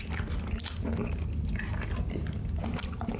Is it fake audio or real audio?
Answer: real